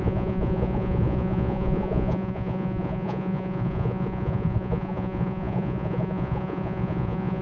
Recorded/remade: remade